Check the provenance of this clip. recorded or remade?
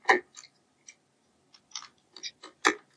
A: recorded